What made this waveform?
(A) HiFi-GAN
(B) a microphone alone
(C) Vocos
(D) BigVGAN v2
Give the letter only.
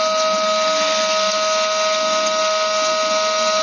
B